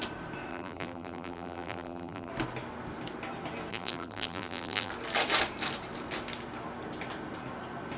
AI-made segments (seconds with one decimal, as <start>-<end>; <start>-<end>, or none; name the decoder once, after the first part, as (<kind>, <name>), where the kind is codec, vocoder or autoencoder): 0.5-2.3 (vocoder, BigVGAN v2); 3.7-4.9